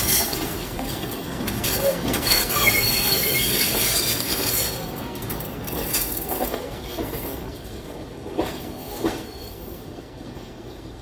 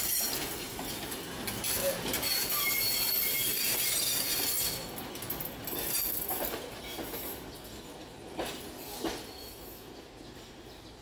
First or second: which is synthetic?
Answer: first